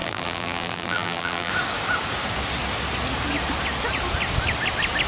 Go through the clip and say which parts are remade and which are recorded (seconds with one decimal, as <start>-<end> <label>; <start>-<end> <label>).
0.0-1.5 remade; 1.5-5.1 recorded